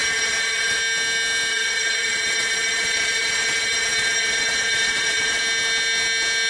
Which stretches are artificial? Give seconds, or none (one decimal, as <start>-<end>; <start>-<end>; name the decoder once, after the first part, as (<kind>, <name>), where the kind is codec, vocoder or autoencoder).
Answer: 0.0-0.8 (vocoder, Vocos); 1.5-5.4